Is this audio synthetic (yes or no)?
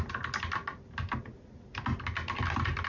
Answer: no